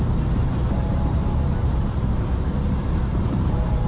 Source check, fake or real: fake